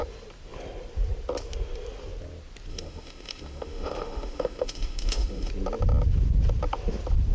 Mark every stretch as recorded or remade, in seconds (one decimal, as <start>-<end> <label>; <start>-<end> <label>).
0.0-2.7 recorded; 2.7-5.5 remade; 5.5-7.3 recorded